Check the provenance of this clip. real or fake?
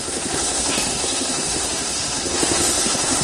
fake